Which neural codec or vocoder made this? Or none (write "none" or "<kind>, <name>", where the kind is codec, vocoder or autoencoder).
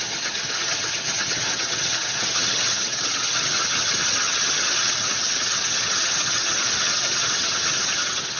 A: vocoder, HiFi-GAN